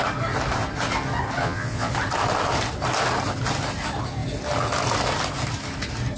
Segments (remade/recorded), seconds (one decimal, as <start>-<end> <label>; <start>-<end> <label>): 0.0-1.4 recorded; 1.4-1.9 remade; 1.9-6.2 recorded